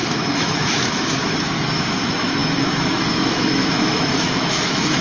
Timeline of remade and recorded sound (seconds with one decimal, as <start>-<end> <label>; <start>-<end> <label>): 0.0-5.0 remade

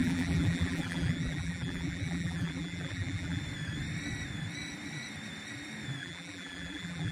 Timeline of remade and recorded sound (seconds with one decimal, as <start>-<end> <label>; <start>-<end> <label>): 0.0-3.4 remade; 3.4-6.0 recorded; 6.0-7.1 remade

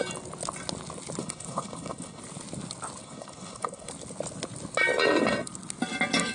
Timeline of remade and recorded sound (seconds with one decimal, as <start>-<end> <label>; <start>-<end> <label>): 0.0-1.2 recorded; 1.2-2.2 remade; 2.2-3.0 recorded; 3.0-3.9 remade; 3.9-6.3 recorded

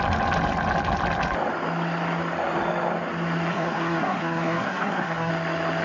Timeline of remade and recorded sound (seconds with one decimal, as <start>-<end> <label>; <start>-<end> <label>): 0.0-3.5 recorded; 3.5-5.3 remade; 5.3-5.8 recorded